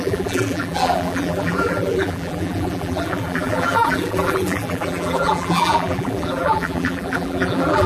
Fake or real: fake